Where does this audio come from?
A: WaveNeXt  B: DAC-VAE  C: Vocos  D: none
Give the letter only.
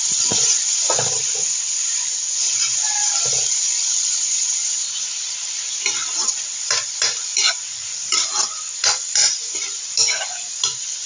D